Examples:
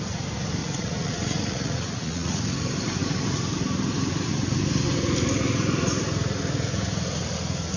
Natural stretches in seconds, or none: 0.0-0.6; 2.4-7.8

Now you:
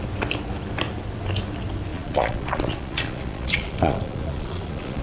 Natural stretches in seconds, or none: 0.0-1.9

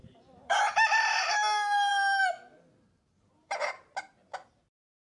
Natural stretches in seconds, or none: 0.6-3.4; 3.9-5.1